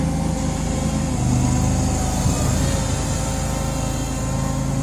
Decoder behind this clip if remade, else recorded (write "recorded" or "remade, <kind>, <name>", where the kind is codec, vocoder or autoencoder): recorded